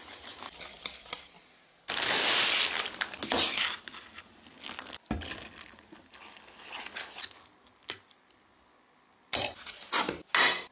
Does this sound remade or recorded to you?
recorded